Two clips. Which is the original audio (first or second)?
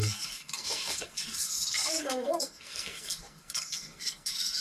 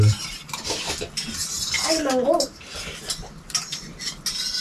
second